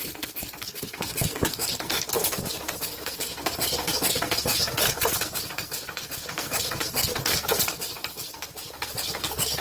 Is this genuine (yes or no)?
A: no